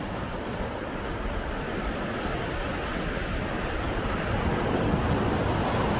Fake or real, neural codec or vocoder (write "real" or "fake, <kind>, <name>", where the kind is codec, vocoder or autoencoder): real